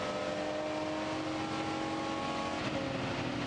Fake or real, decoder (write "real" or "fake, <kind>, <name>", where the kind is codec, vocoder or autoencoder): real